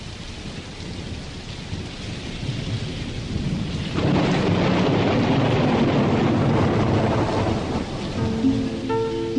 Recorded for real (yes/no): yes